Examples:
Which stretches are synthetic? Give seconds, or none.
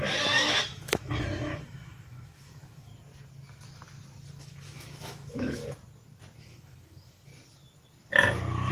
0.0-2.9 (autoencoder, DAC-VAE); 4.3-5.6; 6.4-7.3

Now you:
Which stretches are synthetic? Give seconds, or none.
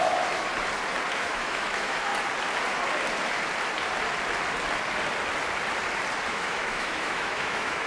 0.0-0.5 (autoencoder, DAC-VAE); 1.1-2.1; 6.3-7.9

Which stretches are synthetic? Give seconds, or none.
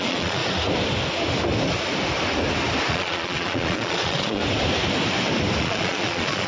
0.0-0.4 (vocoder, Vocos); 2.9-4.4; 5.6-6.5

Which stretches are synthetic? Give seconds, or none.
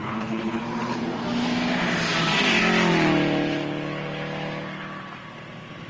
0.0-0.6 (codec, HILCodec)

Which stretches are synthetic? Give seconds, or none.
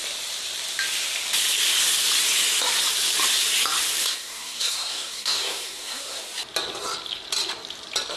4.0-6.2 (codec, SNAC)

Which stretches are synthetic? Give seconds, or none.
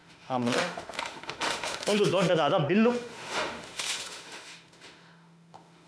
0.0-5.9 (autoencoder, DAC-VAE)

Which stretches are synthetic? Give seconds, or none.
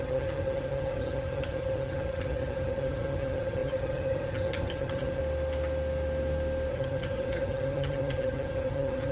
0.0-5.2 (vocoder, HiFi-GAN); 6.7-9.1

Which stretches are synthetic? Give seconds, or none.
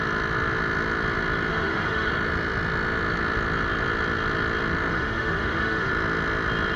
1.5-2.1 (autoencoder, DAC-VAE); 4.9-5.9